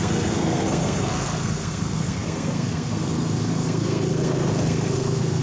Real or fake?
fake